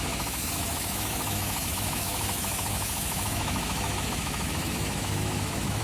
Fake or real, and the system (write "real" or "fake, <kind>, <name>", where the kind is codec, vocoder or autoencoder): fake, autoencoder, DAC-VAE